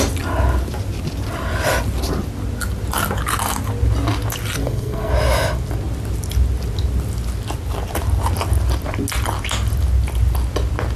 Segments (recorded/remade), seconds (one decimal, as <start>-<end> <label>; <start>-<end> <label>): 0.0-4.6 recorded; 4.6-5.1 remade; 5.1-11.0 recorded